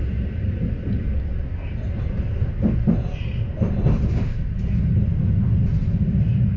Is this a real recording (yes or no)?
yes